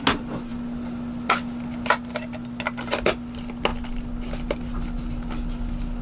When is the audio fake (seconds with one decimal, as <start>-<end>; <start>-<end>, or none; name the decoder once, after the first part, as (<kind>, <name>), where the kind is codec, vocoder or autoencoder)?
none